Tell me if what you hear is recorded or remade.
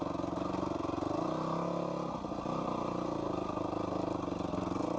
recorded